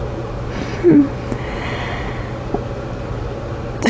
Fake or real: real